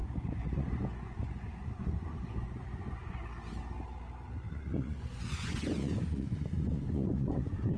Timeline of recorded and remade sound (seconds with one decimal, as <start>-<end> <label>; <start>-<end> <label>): 0.0-3.2 remade; 3.2-4.5 recorded; 4.5-7.8 remade